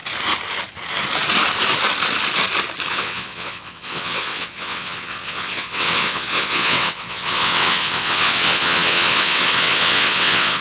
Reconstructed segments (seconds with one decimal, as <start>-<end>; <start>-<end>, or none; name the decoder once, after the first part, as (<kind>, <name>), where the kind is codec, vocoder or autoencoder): 2.9-10.6 (vocoder, WaveNeXt)